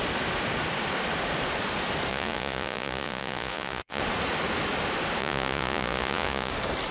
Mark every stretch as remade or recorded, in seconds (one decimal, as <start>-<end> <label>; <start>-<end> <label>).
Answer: 0.0-2.1 recorded; 2.1-4.0 remade; 4.0-5.2 recorded; 5.2-6.5 remade; 6.5-6.9 recorded